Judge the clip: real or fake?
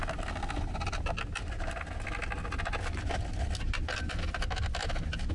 real